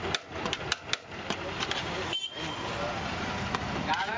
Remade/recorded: recorded